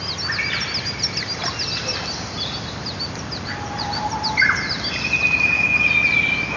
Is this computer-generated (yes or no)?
no